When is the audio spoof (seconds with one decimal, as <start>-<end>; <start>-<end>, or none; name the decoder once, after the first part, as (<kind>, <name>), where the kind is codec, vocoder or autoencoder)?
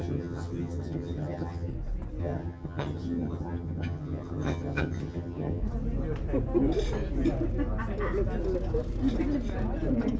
0.0-1.7 (vocoder, HiFi-GAN); 2.2-5.6